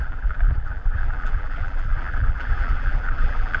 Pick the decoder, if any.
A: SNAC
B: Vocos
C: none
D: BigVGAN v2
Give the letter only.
D